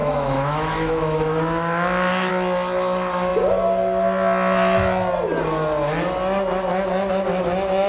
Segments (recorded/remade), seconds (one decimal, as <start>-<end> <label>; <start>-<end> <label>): 0.0-2.3 remade; 2.3-7.9 recorded